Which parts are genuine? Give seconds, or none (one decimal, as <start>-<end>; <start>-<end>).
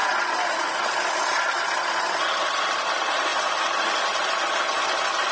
0.0-5.3